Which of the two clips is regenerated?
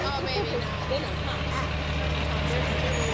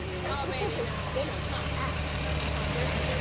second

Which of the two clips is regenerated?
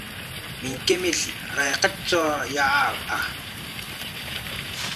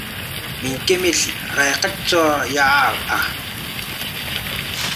first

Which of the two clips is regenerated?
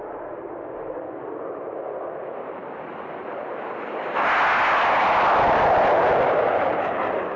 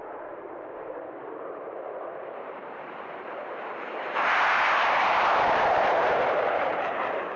second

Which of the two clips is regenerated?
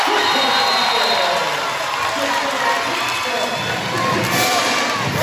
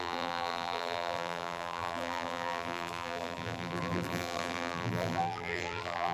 second